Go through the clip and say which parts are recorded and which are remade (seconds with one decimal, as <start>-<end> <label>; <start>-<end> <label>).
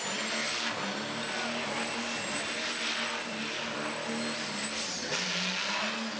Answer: 0.0-6.2 recorded